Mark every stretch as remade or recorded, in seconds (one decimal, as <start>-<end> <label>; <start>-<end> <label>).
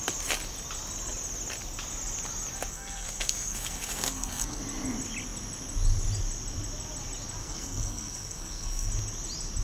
0.0-2.7 recorded; 2.7-4.6 remade; 4.6-7.4 recorded; 7.4-8.9 remade; 8.9-9.6 recorded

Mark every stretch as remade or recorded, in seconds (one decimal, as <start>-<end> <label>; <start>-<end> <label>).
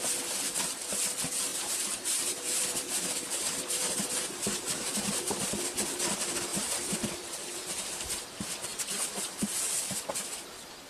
0.0-1.5 recorded; 1.5-5.5 remade; 5.5-6.5 recorded; 6.5-7.7 remade; 7.7-10.9 recorded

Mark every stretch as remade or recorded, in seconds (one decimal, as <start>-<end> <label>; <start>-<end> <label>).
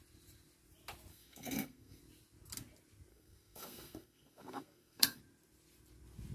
0.0-1.1 recorded; 1.1-2.0 remade; 2.0-3.1 recorded; 3.1-5.2 remade; 5.2-6.3 recorded